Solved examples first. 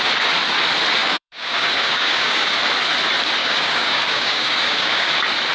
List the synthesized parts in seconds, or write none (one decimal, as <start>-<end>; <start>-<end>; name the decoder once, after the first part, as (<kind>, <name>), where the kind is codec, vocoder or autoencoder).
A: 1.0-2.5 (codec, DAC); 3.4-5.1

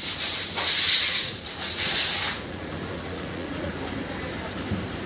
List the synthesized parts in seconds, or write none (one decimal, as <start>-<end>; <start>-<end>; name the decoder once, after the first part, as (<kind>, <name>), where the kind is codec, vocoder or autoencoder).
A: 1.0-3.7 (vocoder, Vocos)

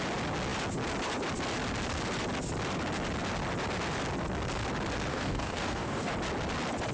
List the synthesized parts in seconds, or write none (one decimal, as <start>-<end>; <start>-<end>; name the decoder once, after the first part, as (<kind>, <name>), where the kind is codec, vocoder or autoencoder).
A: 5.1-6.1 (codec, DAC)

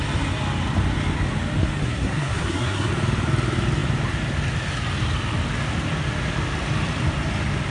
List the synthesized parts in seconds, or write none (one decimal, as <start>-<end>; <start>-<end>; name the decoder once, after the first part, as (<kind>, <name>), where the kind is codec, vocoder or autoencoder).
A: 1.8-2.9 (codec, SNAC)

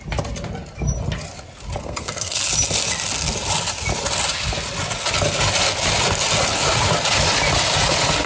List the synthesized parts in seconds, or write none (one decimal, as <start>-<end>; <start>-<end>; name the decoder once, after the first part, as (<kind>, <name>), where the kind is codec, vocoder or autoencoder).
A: 1.8-2.4 (codec, SNAC)